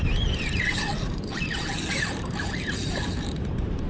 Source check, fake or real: fake